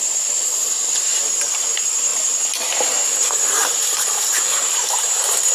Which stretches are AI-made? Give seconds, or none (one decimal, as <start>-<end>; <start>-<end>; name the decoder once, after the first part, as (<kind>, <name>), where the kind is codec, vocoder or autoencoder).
none